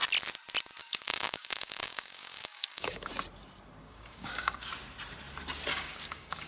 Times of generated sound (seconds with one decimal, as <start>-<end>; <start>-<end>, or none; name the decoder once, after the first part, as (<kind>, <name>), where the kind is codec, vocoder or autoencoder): 0.8-3.1 (codec, DAC); 3.8-4.7; 5.7-6.5